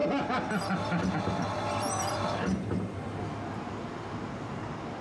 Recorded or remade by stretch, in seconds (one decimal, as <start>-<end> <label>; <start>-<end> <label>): 0.0-2.5 recorded; 2.5-3.2 remade; 3.2-5.0 recorded